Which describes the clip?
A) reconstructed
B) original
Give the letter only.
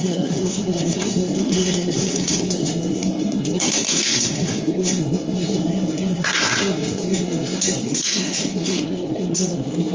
A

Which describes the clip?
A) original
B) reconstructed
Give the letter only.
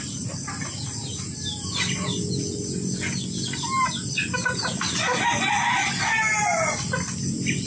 A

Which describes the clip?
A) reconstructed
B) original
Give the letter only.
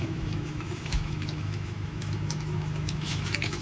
A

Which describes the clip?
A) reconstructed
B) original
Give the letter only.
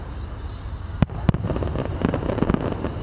B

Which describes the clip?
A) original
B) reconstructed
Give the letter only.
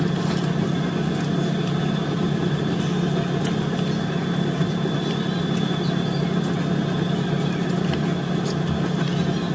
A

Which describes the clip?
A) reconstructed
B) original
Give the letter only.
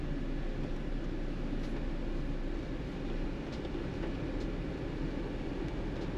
B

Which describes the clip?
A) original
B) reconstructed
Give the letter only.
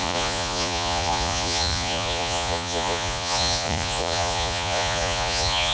B